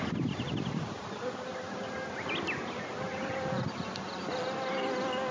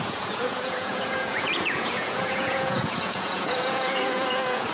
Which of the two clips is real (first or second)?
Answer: first